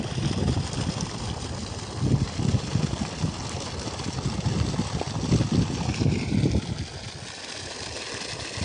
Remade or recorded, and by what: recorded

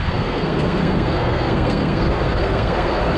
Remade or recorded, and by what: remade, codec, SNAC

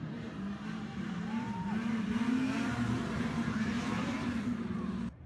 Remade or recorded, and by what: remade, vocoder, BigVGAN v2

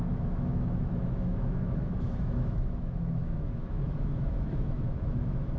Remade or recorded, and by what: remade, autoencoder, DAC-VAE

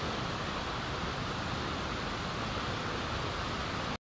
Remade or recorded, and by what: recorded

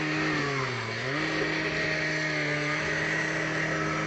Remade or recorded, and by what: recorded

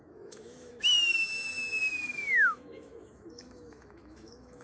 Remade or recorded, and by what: remade, autoencoder, DAC-VAE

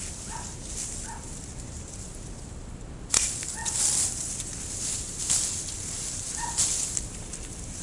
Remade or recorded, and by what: remade, vocoder, BigVGAN v2